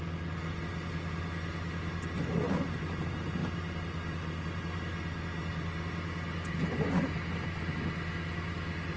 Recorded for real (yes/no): yes